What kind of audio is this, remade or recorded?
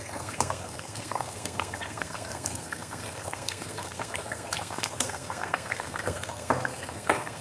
remade